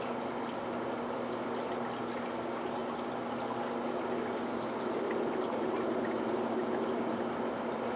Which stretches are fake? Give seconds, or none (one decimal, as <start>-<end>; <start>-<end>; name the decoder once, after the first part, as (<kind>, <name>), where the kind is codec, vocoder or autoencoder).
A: none